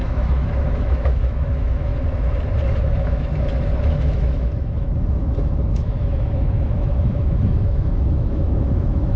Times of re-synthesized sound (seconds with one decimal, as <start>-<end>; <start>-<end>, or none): 0.0-1.9; 2.8-3.3; 3.9-9.2